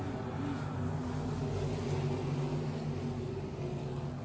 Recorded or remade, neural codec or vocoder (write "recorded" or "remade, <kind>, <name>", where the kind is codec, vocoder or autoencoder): recorded